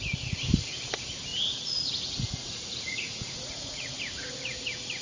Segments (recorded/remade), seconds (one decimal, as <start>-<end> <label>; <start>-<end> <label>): 0.0-1.3 recorded; 1.3-4.3 remade; 4.3-5.0 recorded